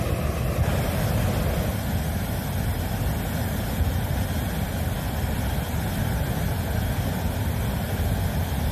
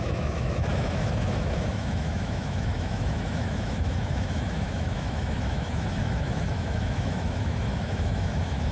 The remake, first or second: second